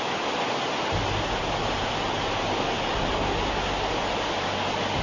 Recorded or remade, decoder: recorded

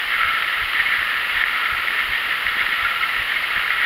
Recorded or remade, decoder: recorded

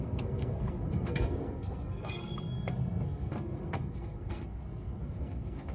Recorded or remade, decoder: remade, codec, SNAC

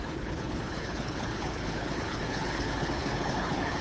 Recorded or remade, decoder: remade, codec, HILCodec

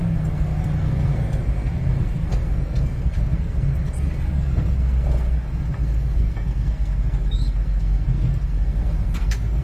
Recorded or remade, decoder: remade, codec, SNAC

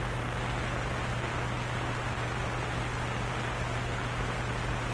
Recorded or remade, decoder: recorded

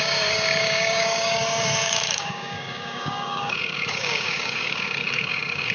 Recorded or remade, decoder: remade, codec, DAC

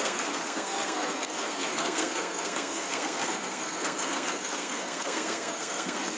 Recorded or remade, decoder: remade, codec, SNAC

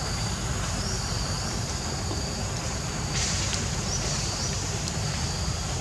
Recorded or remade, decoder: remade, vocoder, BigVGAN v2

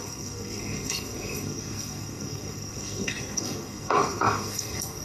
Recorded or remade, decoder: remade, codec, SNAC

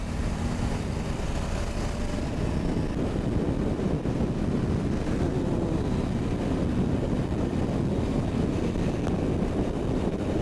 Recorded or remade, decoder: recorded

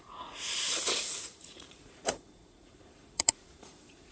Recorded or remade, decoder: remade, vocoder, Vocos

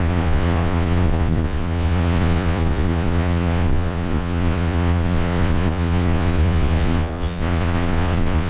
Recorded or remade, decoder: remade, vocoder, Vocos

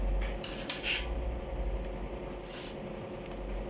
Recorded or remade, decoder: recorded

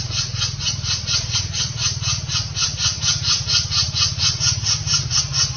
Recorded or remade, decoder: recorded